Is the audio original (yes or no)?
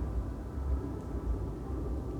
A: yes